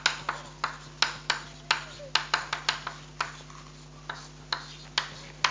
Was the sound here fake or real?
real